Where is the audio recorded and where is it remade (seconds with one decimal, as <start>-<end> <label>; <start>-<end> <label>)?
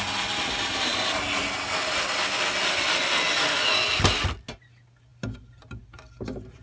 0.0-6.6 recorded